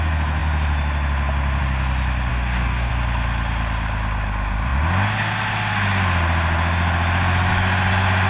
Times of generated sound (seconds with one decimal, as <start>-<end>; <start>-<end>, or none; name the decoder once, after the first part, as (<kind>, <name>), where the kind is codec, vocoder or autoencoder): 2.3-2.9 (codec, DAC)